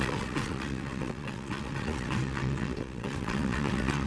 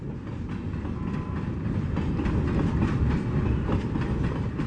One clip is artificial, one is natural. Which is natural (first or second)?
second